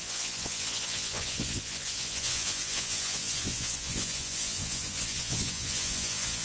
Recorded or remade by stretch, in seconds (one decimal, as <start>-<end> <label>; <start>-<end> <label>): 0.0-6.4 remade